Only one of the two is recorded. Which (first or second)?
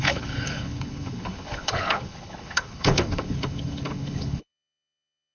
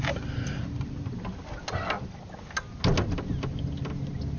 second